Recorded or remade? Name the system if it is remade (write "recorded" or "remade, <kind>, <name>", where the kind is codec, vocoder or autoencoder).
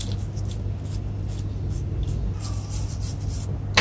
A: recorded